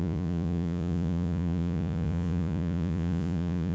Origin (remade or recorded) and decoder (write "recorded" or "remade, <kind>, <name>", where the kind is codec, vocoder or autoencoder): remade, vocoder, Vocos